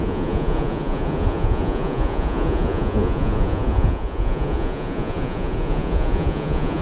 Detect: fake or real fake